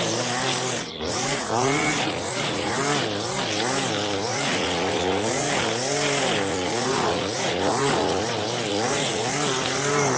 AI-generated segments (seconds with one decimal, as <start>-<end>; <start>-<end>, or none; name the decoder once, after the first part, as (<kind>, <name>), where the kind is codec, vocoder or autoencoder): 0.9-2.8 (vocoder, Vocos); 4.3-5.5; 6.5-8.2; 8.7-9.3